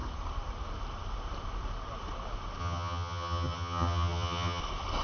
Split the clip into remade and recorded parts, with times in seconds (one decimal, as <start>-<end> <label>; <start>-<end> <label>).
0.0-2.6 recorded; 2.6-4.6 remade; 4.6-5.0 recorded